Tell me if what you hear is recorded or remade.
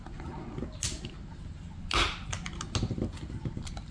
recorded